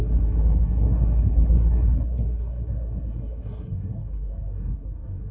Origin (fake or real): fake